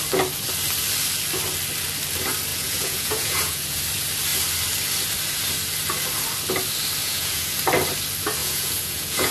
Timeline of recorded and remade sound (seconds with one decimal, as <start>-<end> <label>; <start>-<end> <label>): 0.0-2.5 recorded; 2.5-3.8 remade; 3.8-7.0 recorded; 7.0-7.6 remade; 7.6-8.4 recorded; 8.4-9.3 remade